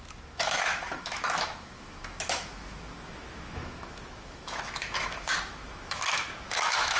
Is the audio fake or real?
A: fake